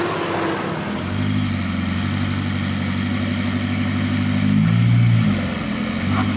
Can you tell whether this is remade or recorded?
recorded